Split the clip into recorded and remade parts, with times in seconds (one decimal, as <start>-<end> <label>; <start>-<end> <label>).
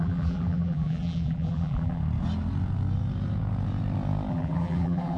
0.0-2.0 remade; 2.0-4.3 recorded; 4.3-5.2 remade